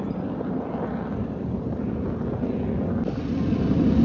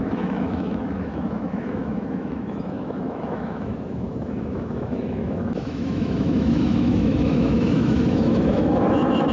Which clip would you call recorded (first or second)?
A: first